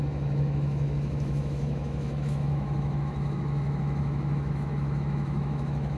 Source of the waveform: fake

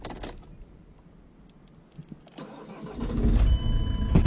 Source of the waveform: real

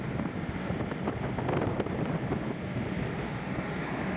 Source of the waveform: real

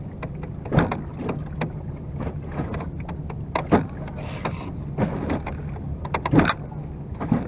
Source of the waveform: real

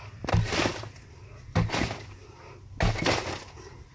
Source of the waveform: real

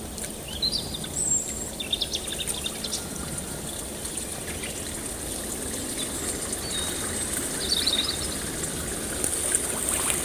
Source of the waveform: real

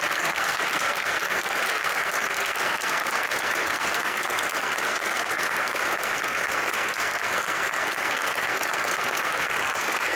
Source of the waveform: fake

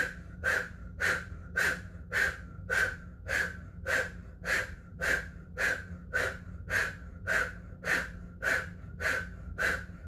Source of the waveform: real